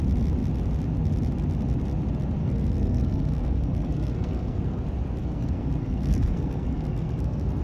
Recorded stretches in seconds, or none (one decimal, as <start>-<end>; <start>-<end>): 0.0-2.4; 4.8-5.2